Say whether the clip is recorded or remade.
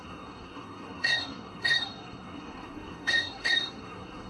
remade